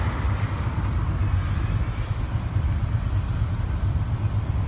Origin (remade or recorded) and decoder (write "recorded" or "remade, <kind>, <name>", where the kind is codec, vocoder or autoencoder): recorded